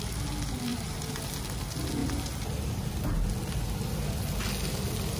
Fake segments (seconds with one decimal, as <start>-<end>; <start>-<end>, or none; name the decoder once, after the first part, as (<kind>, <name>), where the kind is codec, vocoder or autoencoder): 0.7-1.3 (vocoder, BigVGAN v2); 2.0-2.9